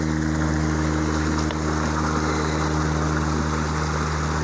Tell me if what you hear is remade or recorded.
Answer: recorded